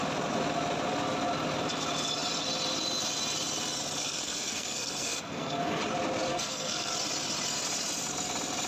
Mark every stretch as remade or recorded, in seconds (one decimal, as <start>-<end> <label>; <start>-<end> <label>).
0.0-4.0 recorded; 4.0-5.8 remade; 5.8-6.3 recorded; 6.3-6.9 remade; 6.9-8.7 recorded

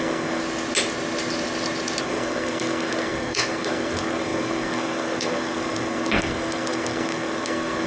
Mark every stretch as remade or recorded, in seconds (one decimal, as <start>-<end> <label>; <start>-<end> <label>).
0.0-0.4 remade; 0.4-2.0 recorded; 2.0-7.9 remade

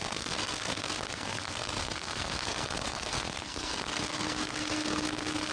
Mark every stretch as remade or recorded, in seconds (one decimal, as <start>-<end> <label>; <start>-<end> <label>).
0.0-5.5 remade

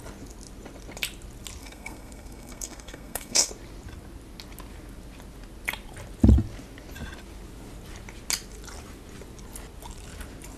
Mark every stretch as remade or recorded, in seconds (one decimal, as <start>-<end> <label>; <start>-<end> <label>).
0.0-1.6 recorded; 1.6-3.5 remade; 3.5-10.6 recorded